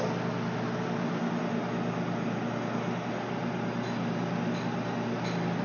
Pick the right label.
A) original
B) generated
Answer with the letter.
A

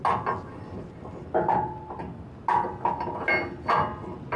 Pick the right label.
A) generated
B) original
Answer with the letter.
B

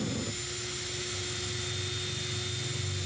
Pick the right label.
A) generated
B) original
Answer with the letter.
B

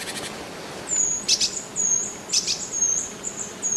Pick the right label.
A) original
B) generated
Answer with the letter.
A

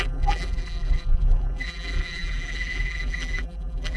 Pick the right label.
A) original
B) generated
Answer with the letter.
B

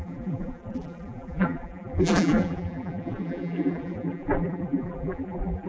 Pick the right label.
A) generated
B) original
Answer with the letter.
A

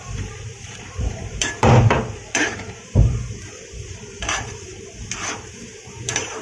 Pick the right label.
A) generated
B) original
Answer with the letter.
A